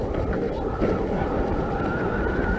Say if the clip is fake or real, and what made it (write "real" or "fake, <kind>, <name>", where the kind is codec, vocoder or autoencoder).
real